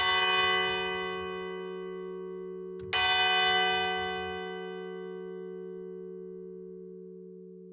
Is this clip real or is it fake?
real